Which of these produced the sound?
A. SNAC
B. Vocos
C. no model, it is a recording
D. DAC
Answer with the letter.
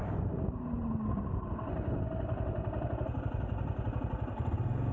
C